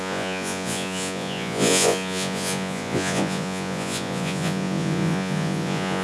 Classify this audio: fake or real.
fake